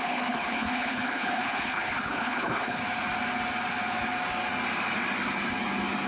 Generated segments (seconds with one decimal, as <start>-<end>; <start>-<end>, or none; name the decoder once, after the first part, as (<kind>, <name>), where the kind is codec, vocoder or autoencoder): 0.0-2.8 (codec, HILCodec)